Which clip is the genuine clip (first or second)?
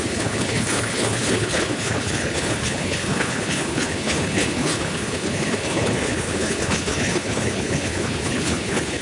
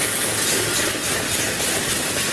second